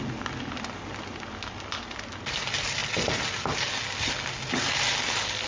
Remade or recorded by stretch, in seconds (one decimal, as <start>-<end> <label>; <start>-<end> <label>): 0.0-5.5 recorded